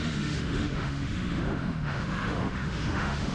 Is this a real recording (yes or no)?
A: no